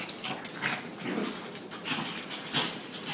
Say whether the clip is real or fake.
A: real